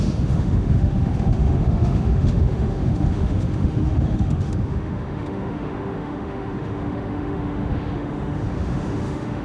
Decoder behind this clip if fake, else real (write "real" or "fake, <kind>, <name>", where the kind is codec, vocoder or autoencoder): fake, autoencoder, DAC-VAE